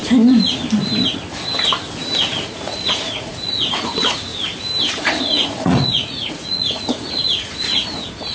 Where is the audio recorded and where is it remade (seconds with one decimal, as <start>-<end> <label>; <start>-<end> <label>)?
0.0-2.4 recorded; 2.4-4.3 remade; 4.3-4.9 recorded; 4.9-8.3 remade